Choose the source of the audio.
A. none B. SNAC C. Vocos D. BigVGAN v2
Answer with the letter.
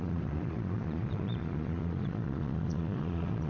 C